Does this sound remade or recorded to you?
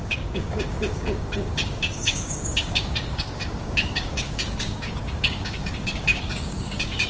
remade